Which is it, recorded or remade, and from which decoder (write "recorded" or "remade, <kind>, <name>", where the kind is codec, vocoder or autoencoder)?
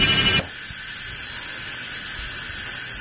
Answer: recorded